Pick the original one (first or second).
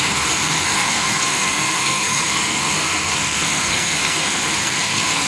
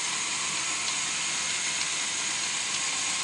second